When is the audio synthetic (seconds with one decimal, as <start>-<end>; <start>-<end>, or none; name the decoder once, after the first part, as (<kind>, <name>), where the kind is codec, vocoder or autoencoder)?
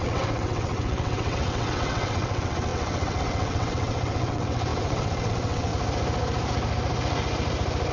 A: 0.0-5.7 (vocoder, WaveNeXt)